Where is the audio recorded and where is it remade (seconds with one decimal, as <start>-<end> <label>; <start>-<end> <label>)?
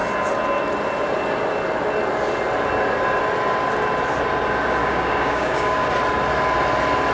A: 0.0-4.8 recorded; 4.8-5.9 remade; 5.9-7.1 recorded